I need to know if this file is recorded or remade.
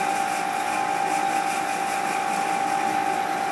recorded